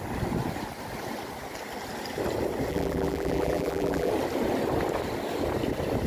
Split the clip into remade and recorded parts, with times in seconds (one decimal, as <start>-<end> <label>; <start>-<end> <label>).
0.0-2.7 recorded; 2.7-4.1 remade; 4.1-6.1 recorded

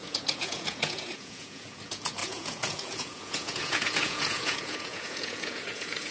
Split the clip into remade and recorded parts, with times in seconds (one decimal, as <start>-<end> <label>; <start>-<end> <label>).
0.0-6.1 remade

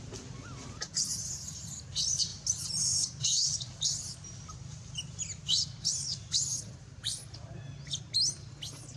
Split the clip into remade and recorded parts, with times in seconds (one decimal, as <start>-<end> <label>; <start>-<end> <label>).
0.0-2.3 recorded; 2.3-7.2 remade; 7.2-9.0 recorded

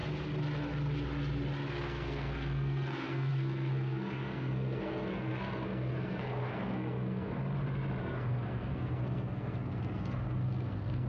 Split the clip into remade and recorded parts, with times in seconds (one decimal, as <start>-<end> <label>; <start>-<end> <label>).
0.0-1.7 recorded; 1.7-7.4 remade; 7.4-8.0 recorded; 8.0-11.1 remade

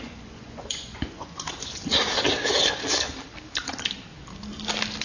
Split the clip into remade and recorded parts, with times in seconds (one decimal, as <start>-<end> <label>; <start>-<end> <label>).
0.0-1.8 remade; 1.8-5.0 recorded